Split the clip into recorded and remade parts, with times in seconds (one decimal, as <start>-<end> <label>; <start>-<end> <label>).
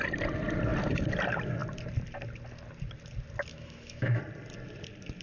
0.0-3.5 recorded; 3.5-4.2 remade; 4.2-5.2 recorded